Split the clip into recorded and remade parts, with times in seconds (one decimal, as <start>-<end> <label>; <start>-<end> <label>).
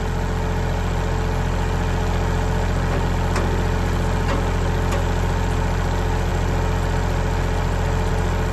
0.0-8.5 recorded